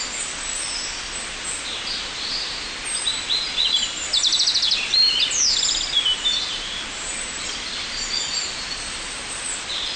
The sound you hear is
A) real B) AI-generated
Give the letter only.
A